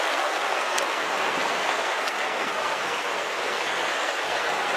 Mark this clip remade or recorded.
remade